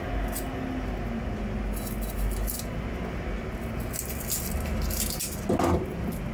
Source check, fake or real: real